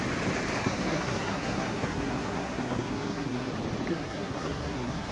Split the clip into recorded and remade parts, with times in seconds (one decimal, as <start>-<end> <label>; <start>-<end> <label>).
0.0-0.6 recorded; 0.6-3.5 remade; 3.5-3.9 recorded; 3.9-5.1 remade